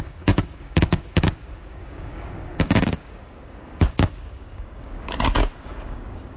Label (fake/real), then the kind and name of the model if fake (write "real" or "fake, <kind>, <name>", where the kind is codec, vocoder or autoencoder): fake, codec, DAC